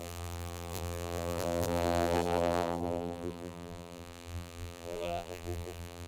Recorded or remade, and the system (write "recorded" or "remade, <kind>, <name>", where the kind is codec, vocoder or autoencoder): remade, vocoder, BigVGAN v2